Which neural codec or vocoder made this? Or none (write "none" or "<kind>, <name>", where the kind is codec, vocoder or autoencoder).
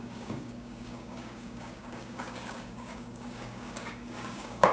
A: codec, DAC